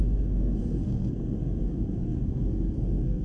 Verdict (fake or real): fake